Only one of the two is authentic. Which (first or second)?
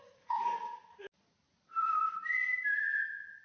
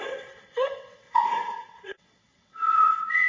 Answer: first